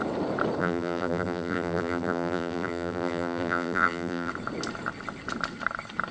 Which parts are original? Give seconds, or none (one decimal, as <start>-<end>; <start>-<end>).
0.0-0.6; 4.3-6.1